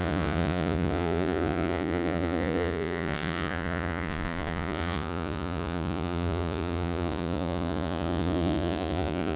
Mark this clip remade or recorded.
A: remade